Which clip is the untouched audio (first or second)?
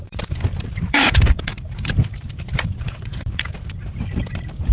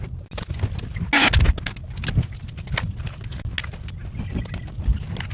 second